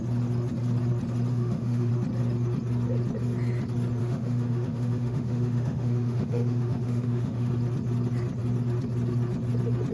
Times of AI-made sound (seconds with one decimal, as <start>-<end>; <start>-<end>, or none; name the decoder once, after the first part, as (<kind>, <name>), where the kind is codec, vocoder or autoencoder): 1.3-1.9 (autoencoder, DAC-VAE); 4.0-7.5

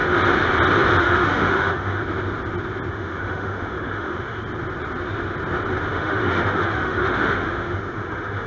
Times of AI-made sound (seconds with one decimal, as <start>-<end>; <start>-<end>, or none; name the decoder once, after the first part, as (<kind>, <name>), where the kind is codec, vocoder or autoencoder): 1.0-2.0 (autoencoder, DAC-VAE); 2.9-4.4; 5.9-8.5

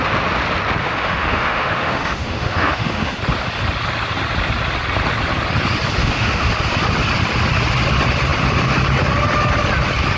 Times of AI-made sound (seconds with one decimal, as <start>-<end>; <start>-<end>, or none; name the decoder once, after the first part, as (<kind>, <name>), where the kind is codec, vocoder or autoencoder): 0.8-3.2 (autoencoder, DAC-VAE); 6.0-6.5

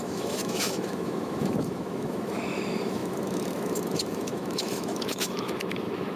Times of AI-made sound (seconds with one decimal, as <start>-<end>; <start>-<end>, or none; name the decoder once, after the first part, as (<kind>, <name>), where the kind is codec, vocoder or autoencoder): 0.0-6.2 (autoencoder, DAC-VAE)

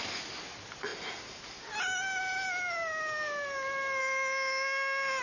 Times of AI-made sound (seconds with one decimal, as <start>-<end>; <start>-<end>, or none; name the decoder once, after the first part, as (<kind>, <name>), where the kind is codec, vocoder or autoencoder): 4.0-5.2 (autoencoder, DAC-VAE)

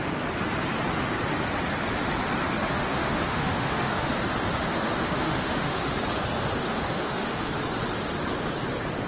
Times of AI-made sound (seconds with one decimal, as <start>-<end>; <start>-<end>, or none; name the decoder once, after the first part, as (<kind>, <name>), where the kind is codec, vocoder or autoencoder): 2.8-4.1 (autoencoder, DAC-VAE); 4.7-5.9; 6.6-7.5

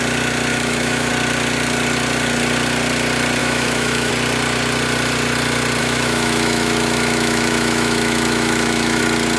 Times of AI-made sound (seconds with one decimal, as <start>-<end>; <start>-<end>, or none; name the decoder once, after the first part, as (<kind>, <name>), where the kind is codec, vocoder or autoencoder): 0.5-1.1 (autoencoder, DAC-VAE); 3.4-4.1; 5.8-9.0